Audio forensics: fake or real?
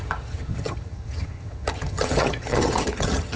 fake